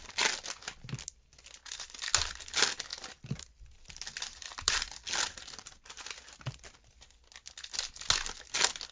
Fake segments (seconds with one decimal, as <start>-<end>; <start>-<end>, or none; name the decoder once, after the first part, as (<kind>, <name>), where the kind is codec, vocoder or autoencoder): 2.9-5.9 (vocoder, BigVGAN v2)